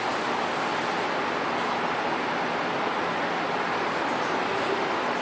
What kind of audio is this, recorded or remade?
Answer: recorded